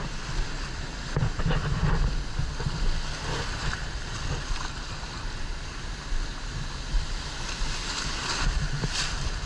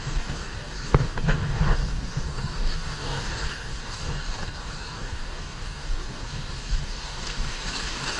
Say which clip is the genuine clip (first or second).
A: first